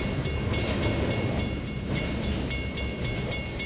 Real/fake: real